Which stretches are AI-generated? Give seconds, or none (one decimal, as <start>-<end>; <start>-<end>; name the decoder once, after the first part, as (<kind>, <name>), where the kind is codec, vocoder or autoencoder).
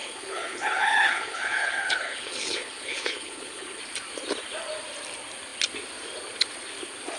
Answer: 0.0-3.8 (codec, HILCodec)